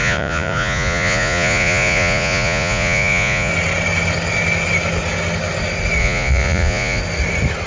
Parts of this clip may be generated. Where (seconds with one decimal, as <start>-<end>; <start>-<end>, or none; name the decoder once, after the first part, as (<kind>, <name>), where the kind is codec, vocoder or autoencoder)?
0.0-3.5 (vocoder, Vocos); 6.0-7.0